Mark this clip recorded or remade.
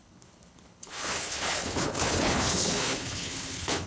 remade